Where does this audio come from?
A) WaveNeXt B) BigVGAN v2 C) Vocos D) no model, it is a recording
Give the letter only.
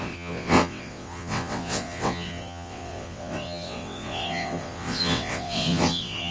A